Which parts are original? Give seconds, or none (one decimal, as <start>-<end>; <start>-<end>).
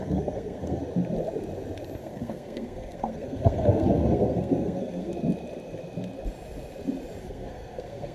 0.8-2.0; 5.1-7.2